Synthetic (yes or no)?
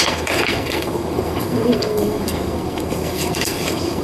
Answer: yes